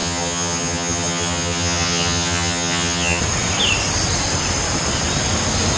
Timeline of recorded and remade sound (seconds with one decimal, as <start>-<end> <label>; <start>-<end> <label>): 0.0-3.2 remade; 3.2-5.8 recorded